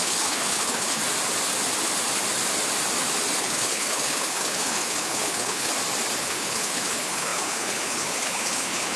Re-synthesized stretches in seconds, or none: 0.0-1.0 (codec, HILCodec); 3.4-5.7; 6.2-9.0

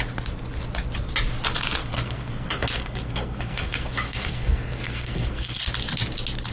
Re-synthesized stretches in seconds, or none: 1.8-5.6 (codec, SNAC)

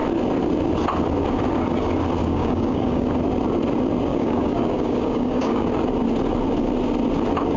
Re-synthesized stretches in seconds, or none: 2.2-3.1 (codec, DAC); 4.1-5.7

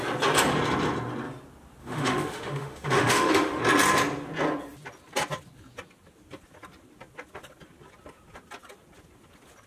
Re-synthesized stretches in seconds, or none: 1.8-3.6 (autoencoder, DAC-VAE)

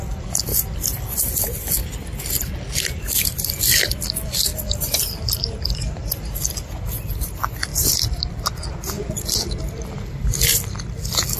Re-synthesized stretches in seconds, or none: 0.0-0.5 (vocoder, BigVGAN v2); 3.6-4.5; 7.3-10.5

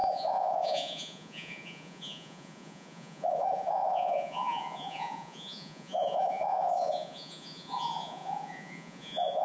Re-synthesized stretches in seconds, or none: 0.0-9.4 (vocoder, Vocos)